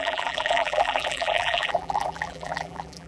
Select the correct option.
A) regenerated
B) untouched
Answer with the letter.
A